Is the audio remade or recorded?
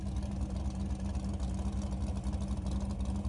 recorded